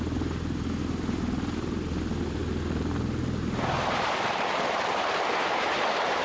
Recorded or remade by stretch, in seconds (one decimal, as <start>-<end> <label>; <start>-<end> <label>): 0.0-6.2 recorded